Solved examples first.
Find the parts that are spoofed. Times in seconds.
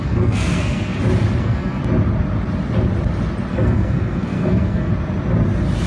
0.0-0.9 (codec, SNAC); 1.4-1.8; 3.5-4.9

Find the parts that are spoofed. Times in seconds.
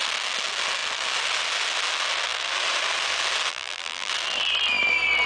3.5-4.1 (vocoder, BigVGAN v2)